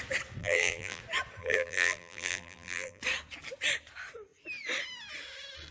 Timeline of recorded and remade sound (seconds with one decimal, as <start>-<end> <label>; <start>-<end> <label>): 0.0-0.4 recorded; 0.4-1.0 remade; 1.0-1.4 recorded; 1.4-3.0 remade; 3.0-5.7 recorded